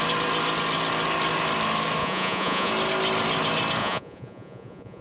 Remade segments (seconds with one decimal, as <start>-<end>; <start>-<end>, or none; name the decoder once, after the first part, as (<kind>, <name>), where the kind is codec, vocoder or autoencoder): 2.0-2.7 (vocoder, Vocos); 3.8-5.0